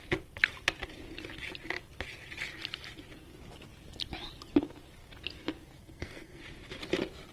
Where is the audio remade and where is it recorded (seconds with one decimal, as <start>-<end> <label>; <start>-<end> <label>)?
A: 0.0-5.8 recorded; 5.8-6.4 remade; 6.4-7.3 recorded